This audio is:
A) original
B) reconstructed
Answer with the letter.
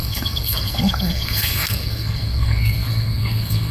B